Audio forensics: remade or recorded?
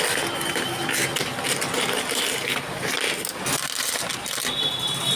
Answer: recorded